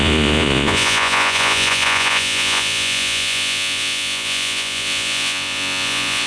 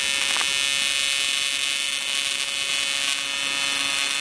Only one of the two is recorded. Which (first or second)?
second